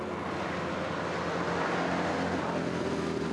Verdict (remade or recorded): recorded